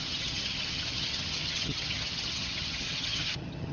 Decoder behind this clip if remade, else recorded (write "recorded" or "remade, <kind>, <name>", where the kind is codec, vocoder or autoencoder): remade, vocoder, HiFi-GAN